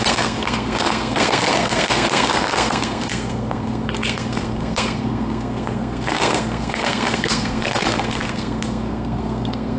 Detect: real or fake fake